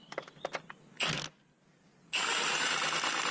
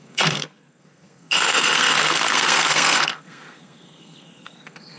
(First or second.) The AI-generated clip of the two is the second